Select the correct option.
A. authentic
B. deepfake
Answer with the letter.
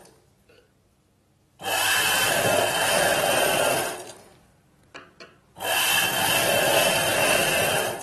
A